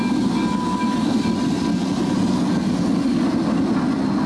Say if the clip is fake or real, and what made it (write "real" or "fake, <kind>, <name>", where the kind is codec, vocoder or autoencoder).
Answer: real